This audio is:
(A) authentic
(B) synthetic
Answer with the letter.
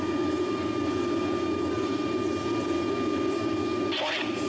A